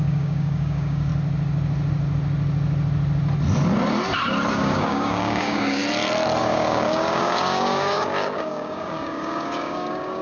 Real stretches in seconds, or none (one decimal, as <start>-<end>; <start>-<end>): 1.1-4.5; 5.8-6.4